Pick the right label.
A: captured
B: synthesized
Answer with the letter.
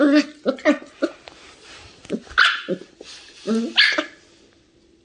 A